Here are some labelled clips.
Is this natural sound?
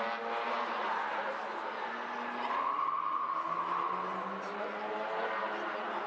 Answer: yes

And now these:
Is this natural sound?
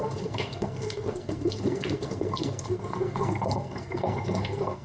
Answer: no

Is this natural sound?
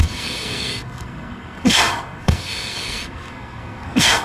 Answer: no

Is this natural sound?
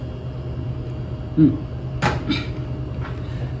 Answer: yes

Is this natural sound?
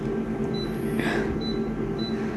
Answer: yes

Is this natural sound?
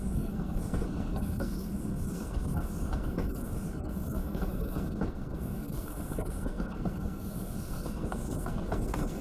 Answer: no